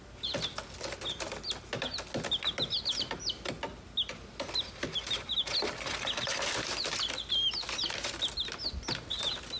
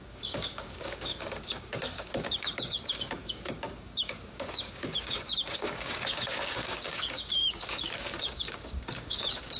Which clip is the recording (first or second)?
first